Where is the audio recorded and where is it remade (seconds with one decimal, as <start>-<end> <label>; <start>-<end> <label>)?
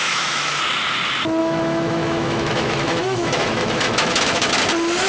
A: 0.0-0.6 remade; 0.6-1.4 recorded; 1.4-4.5 remade; 4.5-5.1 recorded